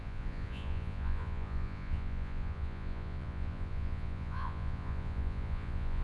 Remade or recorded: remade